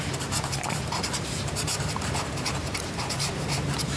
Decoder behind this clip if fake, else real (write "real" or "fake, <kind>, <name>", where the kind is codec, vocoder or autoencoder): fake, vocoder, BigVGAN v2